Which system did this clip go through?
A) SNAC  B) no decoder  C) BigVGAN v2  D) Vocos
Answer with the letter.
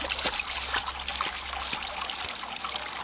B